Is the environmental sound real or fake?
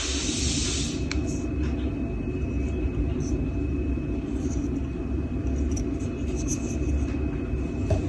real